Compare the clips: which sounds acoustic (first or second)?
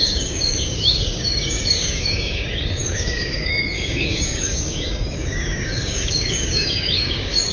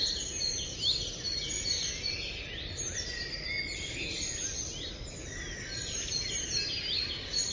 second